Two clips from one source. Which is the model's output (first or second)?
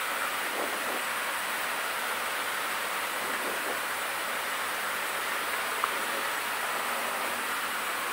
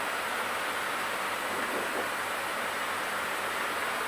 first